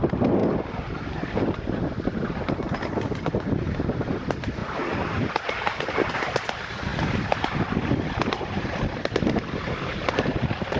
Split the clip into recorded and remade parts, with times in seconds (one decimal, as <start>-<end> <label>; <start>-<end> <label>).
0.0-4.6 recorded; 4.6-6.5 remade; 6.5-6.9 recorded; 6.9-9.3 remade; 9.3-10.8 recorded